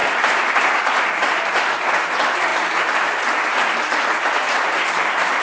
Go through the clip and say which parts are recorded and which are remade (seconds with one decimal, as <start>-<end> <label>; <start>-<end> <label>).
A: 0.0-5.4 recorded

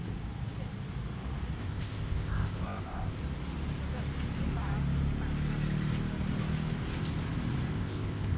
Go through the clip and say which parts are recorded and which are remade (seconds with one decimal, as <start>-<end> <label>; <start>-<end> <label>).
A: 0.0-1.6 recorded; 1.6-3.2 remade; 3.2-7.7 recorded; 7.7-8.4 remade

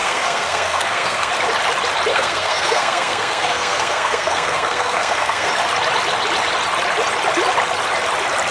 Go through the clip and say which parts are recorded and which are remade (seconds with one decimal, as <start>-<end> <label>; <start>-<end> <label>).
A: 0.0-1.3 remade; 1.3-2.1 recorded; 2.1-5.5 remade; 5.5-8.5 recorded

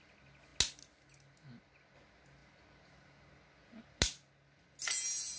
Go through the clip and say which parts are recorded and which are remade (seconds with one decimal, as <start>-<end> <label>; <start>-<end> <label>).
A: 0.0-5.4 recorded

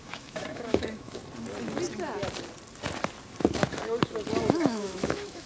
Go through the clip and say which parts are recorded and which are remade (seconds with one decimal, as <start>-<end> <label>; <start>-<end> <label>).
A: 0.0-1.2 remade; 1.2-4.5 recorded; 4.5-5.5 remade

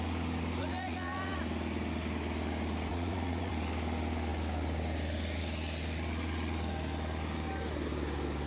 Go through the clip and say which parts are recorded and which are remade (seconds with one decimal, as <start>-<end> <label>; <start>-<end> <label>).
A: 0.0-0.6 recorded; 0.6-1.4 remade; 1.4-2.9 recorded; 2.9-3.5 remade; 3.5-8.5 recorded